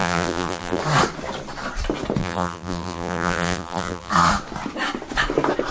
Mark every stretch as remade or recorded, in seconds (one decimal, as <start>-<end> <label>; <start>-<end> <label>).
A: 0.0-0.8 remade; 0.8-2.2 recorded; 2.2-4.1 remade; 4.1-5.7 recorded